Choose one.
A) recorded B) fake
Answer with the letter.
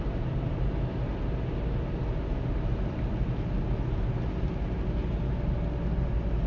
A